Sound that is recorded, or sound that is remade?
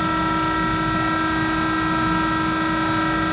recorded